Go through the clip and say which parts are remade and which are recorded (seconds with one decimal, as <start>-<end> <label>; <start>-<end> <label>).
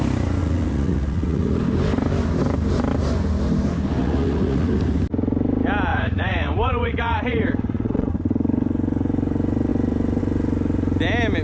0.0-0.4 recorded; 0.4-1.6 remade; 1.6-4.0 recorded; 4.0-4.7 remade; 4.7-5.9 recorded; 5.9-8.1 remade; 8.1-11.4 recorded